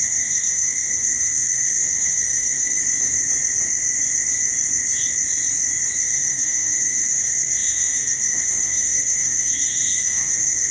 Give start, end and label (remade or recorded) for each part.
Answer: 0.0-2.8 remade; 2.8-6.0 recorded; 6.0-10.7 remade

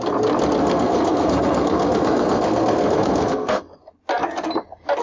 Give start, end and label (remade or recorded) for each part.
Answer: 0.0-0.6 recorded; 0.6-3.6 remade; 3.6-5.0 recorded

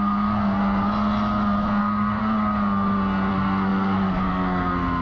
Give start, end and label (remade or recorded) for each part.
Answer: 0.0-0.6 remade; 0.6-1.8 recorded; 1.8-2.2 remade; 2.2-3.3 recorded; 3.3-5.0 remade

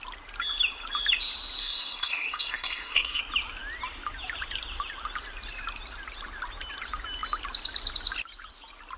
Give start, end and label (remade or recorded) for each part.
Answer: 0.0-1.6 recorded; 1.6-3.2 remade; 3.2-9.0 recorded

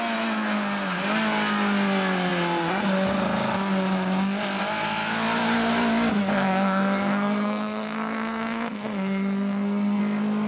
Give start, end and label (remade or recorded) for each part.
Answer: 0.0-6.2 recorded; 6.2-10.0 remade; 10.0-10.5 recorded

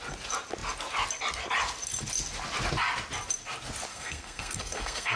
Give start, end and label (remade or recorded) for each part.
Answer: 0.0-3.9 recorded; 3.9-5.2 remade

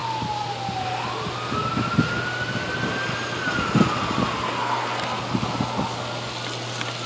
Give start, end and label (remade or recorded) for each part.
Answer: 0.0-4.6 recorded; 4.6-5.2 remade; 5.2-7.1 recorded